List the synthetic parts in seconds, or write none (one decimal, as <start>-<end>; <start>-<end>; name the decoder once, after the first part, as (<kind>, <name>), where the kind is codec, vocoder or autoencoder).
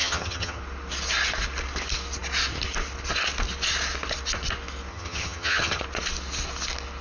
0.0-0.6 (vocoder, HiFi-GAN); 4.9-5.8